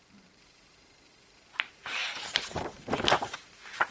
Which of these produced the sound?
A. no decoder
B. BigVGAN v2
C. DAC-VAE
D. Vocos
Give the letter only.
B